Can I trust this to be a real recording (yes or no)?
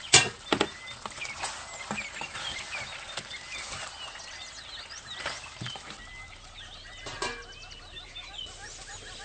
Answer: yes